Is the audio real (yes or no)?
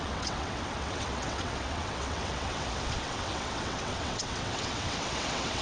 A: no